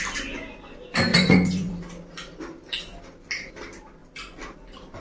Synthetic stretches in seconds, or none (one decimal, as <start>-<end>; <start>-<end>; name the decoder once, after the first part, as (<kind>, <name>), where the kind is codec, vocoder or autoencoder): 1.1-1.7 (vocoder, Vocos)